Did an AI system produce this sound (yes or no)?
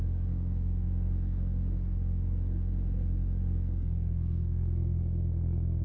yes